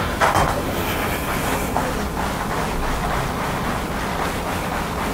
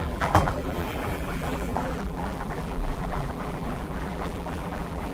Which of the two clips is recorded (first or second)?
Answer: first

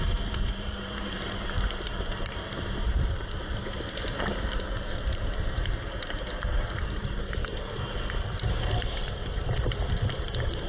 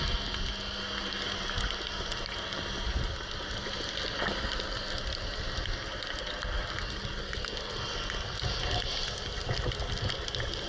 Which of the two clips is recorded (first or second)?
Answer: second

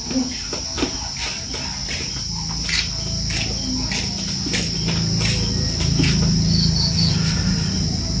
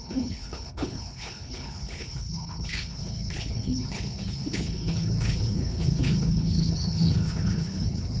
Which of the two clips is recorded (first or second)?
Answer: first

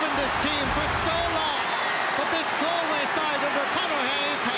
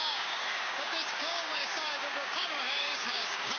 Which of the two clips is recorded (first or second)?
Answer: first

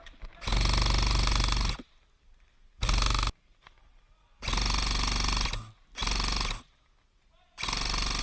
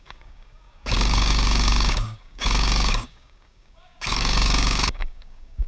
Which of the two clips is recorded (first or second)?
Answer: first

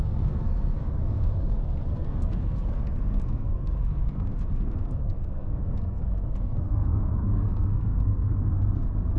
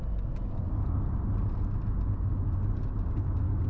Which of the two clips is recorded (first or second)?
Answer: second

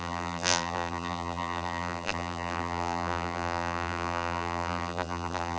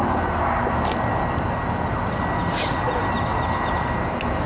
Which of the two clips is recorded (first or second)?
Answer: second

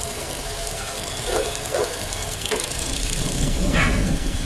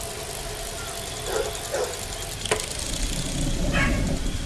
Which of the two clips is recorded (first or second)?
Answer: second